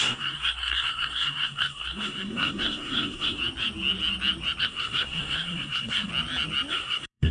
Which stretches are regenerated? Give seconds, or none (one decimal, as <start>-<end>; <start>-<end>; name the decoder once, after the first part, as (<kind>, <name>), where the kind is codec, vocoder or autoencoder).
0.0-3.4 (codec, SNAC); 4.6-6.1; 6.7-7.3